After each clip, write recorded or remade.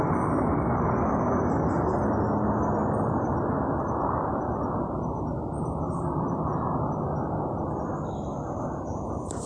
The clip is recorded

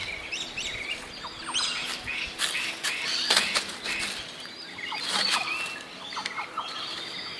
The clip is recorded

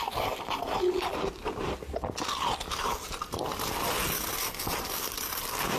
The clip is recorded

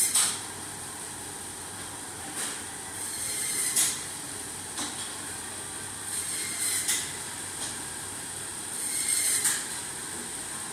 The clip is remade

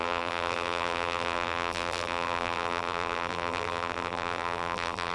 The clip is remade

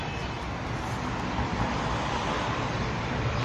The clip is recorded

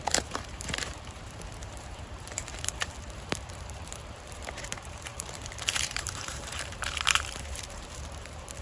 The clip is remade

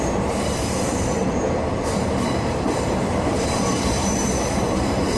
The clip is remade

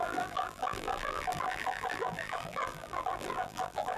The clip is remade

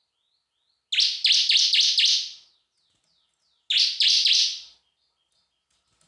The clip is recorded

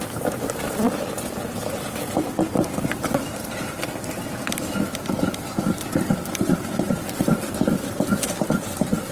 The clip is remade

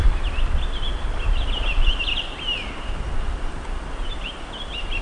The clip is remade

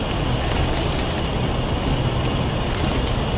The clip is recorded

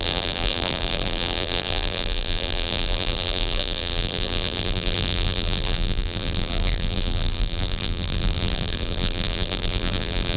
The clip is remade